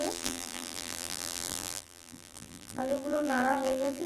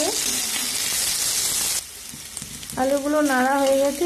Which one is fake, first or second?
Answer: first